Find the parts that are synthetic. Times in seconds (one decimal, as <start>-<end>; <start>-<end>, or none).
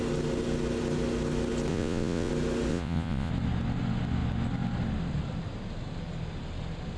1.7-2.3; 2.7-3.3